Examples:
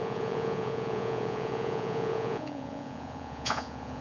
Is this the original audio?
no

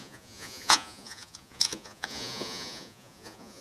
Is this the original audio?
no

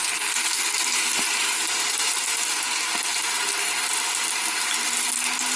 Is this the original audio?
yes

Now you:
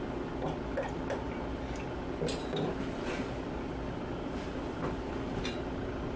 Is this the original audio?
yes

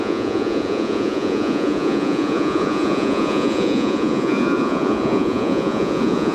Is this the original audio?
no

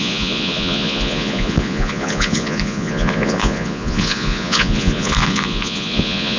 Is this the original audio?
no